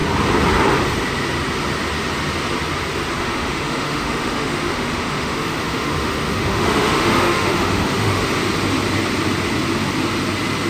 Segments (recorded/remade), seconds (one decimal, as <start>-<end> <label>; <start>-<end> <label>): 0.0-3.2 recorded; 3.2-8.2 remade; 8.2-10.7 recorded